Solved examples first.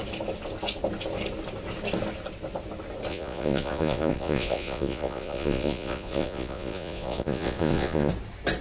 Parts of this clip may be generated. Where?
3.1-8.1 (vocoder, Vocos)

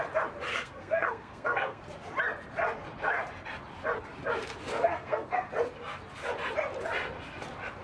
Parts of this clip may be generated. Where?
0.5-1.8 (codec, SNAC); 4.7-5.5

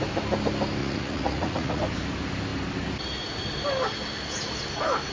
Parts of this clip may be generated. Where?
0.8-1.8 (vocoder, Vocos)

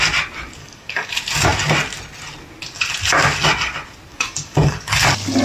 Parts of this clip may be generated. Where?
0.6-1.1 (codec, DAC); 4.1-4.9

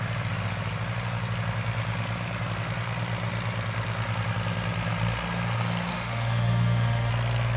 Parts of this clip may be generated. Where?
5.9-7.1 (autoencoder, DAC-VAE)

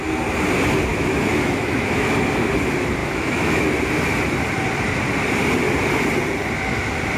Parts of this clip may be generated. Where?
0.9-2.1 (autoencoder, DAC-VAE); 3.0-3.6